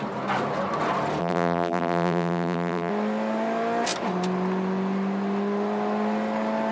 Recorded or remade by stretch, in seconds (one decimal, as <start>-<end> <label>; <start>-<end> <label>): 0.0-1.2 recorded; 1.2-2.9 remade; 2.9-6.7 recorded